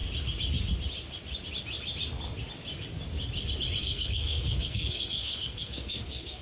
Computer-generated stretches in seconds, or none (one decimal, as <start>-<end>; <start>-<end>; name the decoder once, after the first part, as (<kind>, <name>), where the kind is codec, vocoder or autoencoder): 3.8-6.4 (codec, SNAC)